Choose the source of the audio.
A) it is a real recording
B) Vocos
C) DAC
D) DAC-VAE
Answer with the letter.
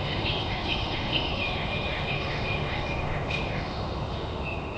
D